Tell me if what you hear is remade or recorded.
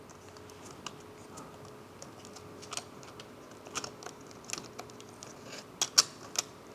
recorded